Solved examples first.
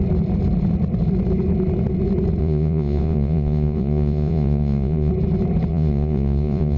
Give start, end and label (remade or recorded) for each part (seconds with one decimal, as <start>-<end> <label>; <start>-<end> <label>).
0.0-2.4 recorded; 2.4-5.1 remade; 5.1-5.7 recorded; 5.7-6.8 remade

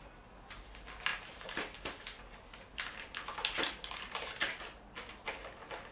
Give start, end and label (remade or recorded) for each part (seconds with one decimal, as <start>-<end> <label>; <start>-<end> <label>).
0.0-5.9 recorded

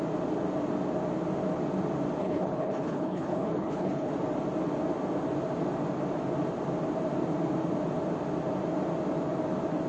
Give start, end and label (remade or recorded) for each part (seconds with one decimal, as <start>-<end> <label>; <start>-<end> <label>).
0.0-2.2 recorded; 2.2-4.1 remade; 4.1-9.9 recorded

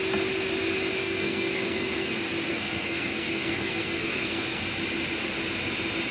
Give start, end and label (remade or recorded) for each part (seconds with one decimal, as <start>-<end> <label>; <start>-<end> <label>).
0.0-1.0 recorded; 1.0-2.1 remade; 2.1-2.5 recorded; 2.5-4.6 remade; 4.6-6.1 recorded